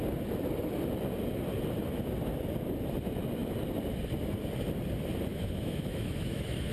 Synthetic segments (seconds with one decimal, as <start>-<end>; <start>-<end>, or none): 5.3-6.7